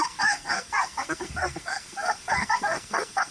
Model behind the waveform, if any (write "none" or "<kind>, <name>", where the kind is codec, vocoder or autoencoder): codec, SNAC